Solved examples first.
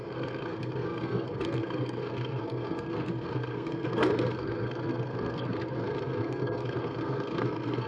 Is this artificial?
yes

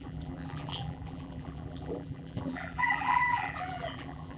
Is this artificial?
yes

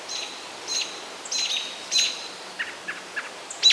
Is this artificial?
no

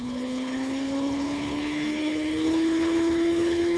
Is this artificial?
yes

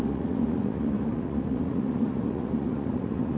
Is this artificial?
yes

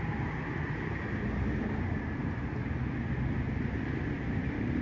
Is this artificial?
no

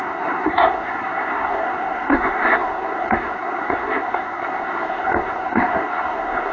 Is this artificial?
yes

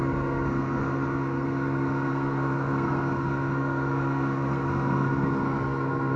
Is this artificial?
yes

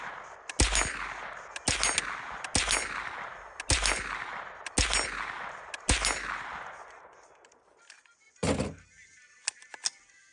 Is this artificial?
no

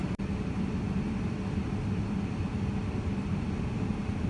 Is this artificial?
no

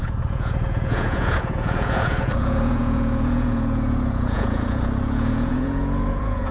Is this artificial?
yes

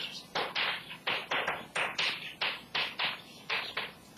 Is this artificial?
no